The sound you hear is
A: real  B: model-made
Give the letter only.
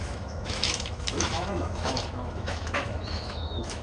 B